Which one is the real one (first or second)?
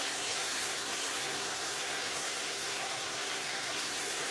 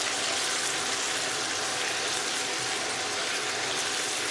second